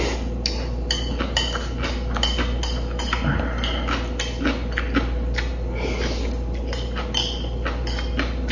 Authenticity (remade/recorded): recorded